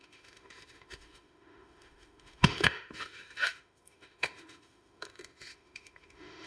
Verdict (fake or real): fake